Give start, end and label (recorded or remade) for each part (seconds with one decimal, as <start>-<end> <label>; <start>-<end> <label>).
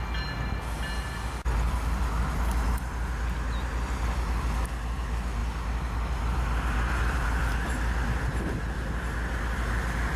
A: 0.0-10.2 recorded